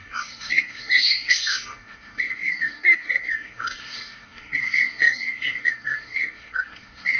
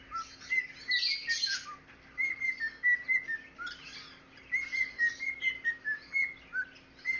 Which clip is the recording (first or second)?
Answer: second